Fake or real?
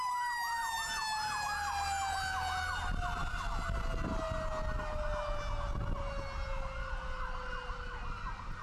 real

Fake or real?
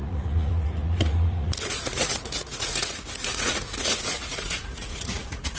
fake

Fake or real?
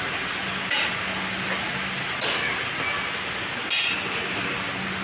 real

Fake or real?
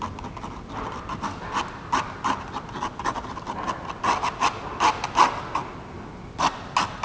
real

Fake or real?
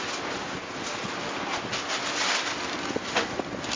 real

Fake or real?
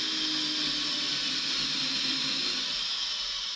real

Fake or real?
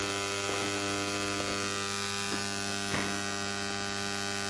real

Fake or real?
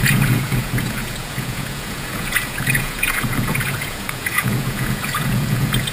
fake